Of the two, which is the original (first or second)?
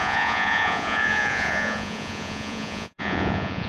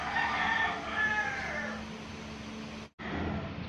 second